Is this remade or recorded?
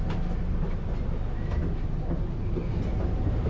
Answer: recorded